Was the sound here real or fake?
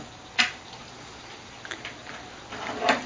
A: real